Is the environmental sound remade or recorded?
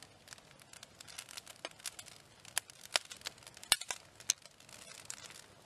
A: recorded